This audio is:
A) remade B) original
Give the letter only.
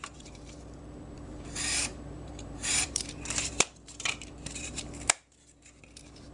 A